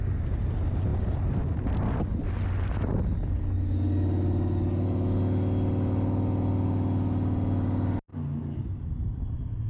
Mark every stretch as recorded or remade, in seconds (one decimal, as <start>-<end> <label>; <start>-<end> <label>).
0.0-9.7 recorded